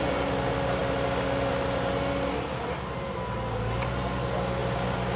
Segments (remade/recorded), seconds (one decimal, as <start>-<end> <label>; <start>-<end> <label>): 0.0-5.2 recorded

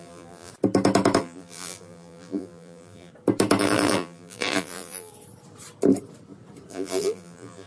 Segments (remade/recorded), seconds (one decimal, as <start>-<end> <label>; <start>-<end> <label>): 0.0-0.5 remade; 0.5-1.2 recorded; 1.2-3.1 remade; 3.1-3.6 recorded; 3.6-5.1 remade; 5.1-6.7 recorded; 6.7-7.7 remade

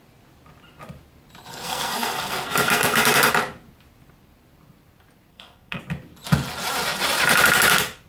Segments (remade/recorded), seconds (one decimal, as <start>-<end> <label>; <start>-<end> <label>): 0.0-1.5 recorded; 1.5-3.3 remade; 3.3-5.3 recorded; 5.3-5.8 remade; 5.8-8.1 recorded

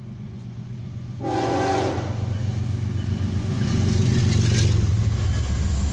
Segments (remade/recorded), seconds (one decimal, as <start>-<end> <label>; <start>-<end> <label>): 0.0-2.5 remade; 2.5-3.4 recorded; 3.4-4.2 remade; 4.2-5.9 recorded

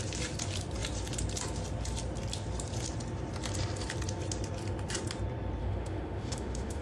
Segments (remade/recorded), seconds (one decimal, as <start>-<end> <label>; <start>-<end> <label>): 0.0-5.6 recorded; 5.6-6.8 remade

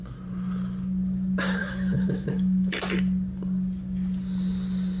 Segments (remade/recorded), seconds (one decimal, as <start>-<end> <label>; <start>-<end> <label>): 0.0-1.6 recorded; 1.6-2.8 remade; 2.8-5.0 recorded